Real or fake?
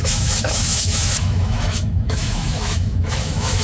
fake